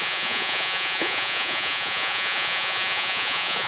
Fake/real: fake